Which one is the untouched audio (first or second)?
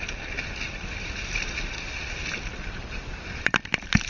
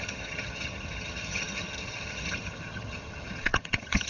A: first